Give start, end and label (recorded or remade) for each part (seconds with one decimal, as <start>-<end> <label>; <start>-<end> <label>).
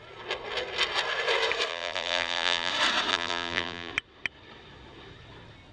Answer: 0.0-1.7 recorded; 1.7-2.7 remade; 2.7-3.1 recorded; 3.1-3.9 remade; 3.9-5.7 recorded